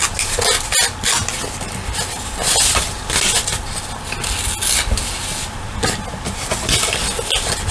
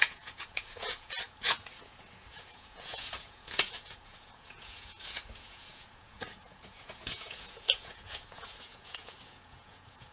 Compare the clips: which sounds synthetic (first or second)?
second